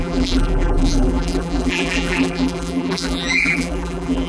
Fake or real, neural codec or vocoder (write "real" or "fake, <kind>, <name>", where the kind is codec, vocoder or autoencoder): fake, vocoder, BigVGAN v2